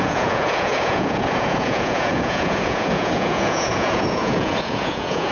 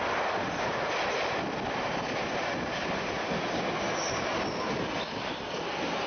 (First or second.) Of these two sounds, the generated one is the first